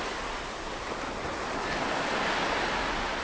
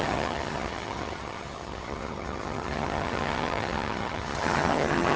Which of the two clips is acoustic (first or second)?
first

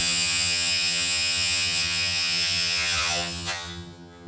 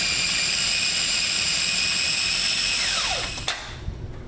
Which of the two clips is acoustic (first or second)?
second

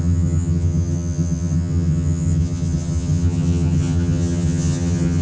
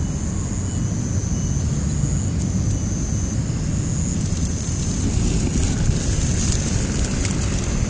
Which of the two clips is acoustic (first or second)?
second